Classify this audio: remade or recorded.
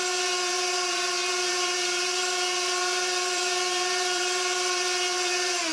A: remade